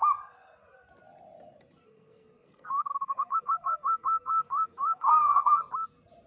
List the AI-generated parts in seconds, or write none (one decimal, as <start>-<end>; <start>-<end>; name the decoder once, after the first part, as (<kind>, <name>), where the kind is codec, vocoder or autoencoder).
1.8-5.6 (codec, SNAC)